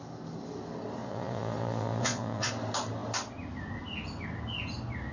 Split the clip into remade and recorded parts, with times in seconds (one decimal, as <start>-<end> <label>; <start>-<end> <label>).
0.0-1.0 recorded; 1.0-2.5 remade; 2.5-5.1 recorded